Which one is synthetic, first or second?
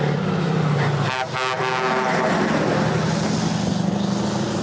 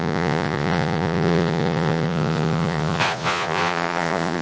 second